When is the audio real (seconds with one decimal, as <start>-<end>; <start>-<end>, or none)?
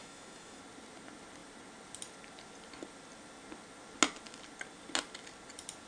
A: 0.6-5.9